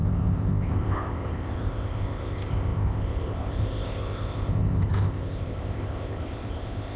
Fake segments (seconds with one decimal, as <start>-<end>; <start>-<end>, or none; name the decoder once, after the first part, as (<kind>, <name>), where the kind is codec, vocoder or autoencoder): 0.0-7.0 (codec, ZipCodec)